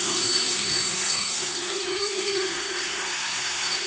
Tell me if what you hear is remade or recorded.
remade